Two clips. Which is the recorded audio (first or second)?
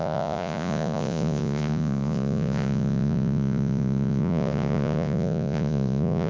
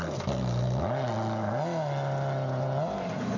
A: second